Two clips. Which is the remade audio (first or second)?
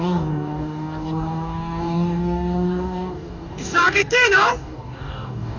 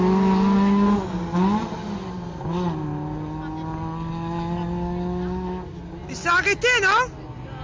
first